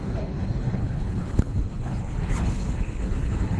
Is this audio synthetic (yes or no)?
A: yes